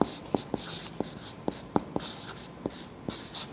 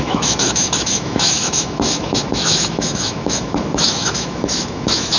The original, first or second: first